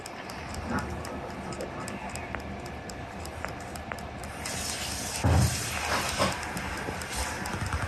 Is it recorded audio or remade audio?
recorded